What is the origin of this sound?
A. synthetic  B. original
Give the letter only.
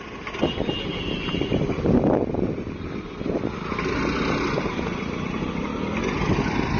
B